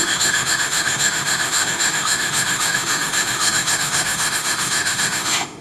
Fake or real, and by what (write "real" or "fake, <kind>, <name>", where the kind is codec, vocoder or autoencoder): fake, autoencoder, DAC-VAE